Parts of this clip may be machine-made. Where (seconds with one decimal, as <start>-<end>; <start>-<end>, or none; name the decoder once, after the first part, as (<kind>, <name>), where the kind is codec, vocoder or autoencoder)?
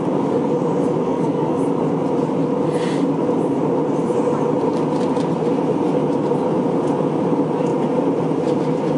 1.0-1.6 (codec, SNAC)